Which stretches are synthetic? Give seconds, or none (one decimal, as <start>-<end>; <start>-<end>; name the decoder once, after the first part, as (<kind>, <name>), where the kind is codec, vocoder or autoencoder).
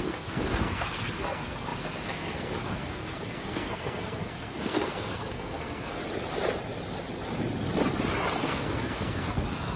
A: 0.0-6.0 (codec, SNAC); 8.4-9.8